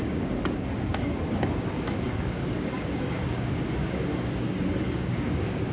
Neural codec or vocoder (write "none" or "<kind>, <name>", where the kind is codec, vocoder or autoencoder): codec, DAC